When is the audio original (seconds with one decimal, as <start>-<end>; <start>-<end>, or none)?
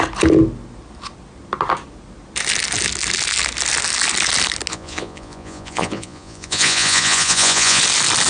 0.0-4.7; 7.8-8.3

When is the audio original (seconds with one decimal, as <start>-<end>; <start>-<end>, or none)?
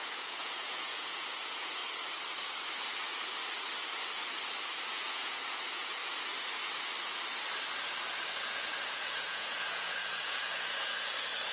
1.8-4.9; 6.0-8.5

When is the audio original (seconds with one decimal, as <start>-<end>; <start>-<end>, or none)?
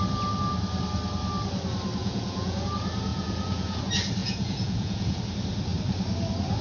0.0-2.0; 2.6-3.1; 3.8-4.2; 5.2-6.6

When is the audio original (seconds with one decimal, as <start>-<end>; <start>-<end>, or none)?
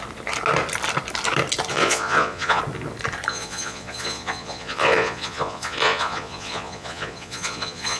0.0-1.7; 2.6-3.3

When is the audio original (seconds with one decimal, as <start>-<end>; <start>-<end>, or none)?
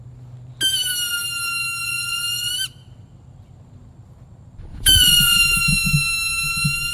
0.0-1.8; 2.5-4.7; 5.4-6.9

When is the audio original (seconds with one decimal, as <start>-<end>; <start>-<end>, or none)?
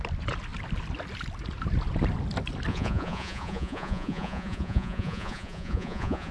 0.0-2.7